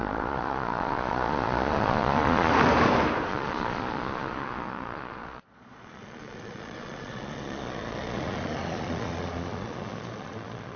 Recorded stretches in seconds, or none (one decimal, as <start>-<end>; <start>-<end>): 2.5-3.3